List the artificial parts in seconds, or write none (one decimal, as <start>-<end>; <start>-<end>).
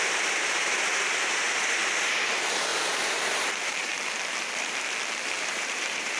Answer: 0.0-1.8; 2.3-3.9; 5.5-6.2